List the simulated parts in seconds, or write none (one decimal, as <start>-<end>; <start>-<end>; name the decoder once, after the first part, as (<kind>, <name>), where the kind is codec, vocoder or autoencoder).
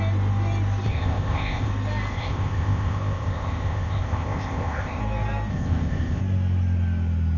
0.9-1.7 (codec, ZipCodec); 2.1-5.0; 5.5-6.2